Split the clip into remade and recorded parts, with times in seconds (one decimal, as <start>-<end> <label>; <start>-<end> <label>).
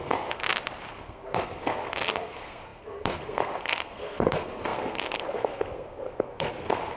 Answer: 0.0-0.4 remade; 0.4-0.9 recorded; 0.9-7.0 remade